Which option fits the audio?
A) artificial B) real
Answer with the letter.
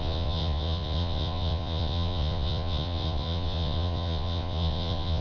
A